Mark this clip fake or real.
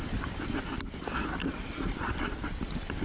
real